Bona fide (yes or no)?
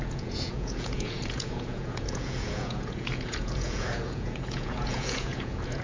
no